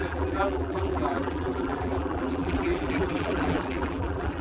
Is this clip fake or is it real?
fake